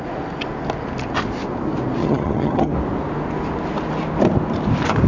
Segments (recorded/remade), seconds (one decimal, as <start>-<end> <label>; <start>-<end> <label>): 0.0-2.0 recorded; 2.0-2.7 remade; 2.7-5.1 recorded